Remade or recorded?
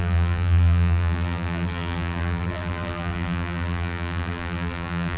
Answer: remade